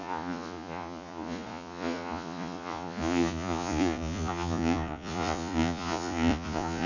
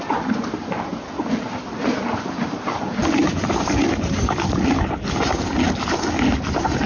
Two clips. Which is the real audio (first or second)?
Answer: second